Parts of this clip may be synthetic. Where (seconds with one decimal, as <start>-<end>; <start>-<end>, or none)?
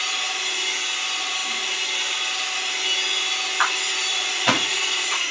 4.1-5.3